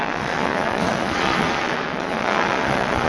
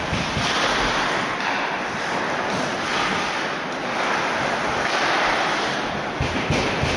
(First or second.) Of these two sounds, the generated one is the first